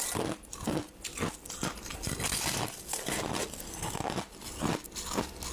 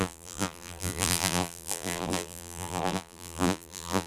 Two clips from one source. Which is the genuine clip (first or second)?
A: first